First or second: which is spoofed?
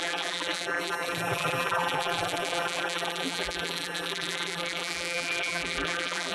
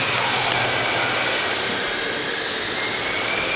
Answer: first